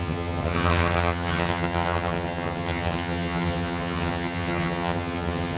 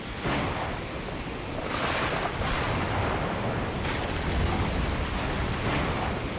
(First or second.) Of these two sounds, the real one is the second